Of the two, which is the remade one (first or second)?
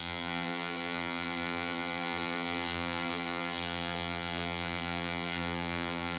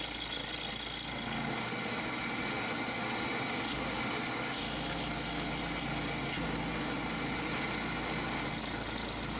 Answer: first